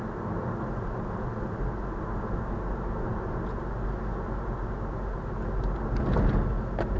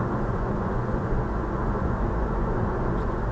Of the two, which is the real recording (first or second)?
first